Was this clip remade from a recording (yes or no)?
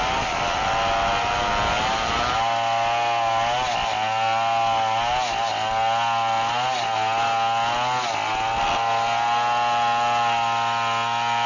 no